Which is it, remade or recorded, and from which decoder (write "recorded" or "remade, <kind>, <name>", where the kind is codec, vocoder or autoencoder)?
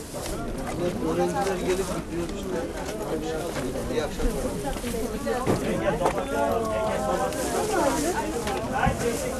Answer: recorded